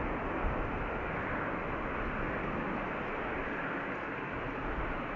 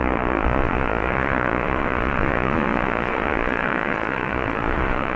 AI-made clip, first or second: second